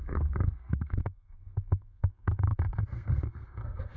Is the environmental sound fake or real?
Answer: fake